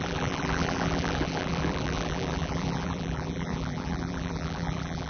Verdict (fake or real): fake